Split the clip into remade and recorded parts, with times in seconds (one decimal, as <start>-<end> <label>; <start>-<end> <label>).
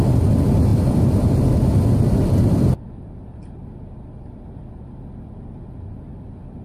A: 0.0-6.6 recorded